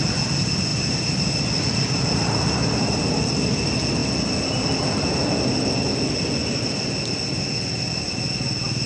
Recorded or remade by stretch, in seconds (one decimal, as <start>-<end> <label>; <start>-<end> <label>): 0.0-0.7 recorded; 0.7-3.2 remade; 3.2-8.9 recorded